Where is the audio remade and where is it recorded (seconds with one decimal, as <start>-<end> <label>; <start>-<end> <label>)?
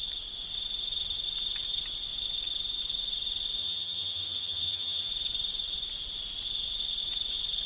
0.0-3.6 recorded; 3.6-5.1 remade; 5.1-7.7 recorded